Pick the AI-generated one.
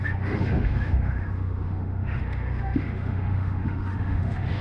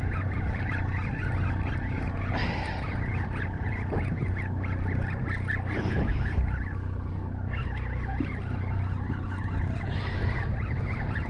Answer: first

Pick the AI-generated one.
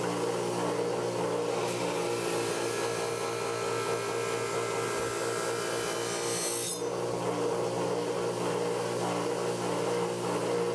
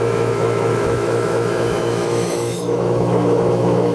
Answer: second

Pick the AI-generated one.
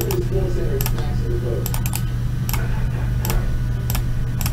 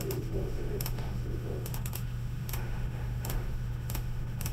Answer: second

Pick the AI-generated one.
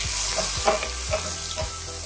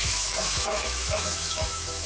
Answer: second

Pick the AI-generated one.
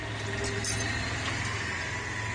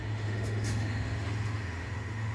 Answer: second